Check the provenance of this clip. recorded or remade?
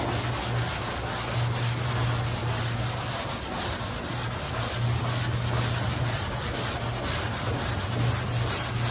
recorded